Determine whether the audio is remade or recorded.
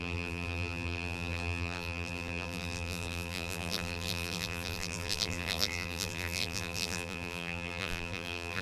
remade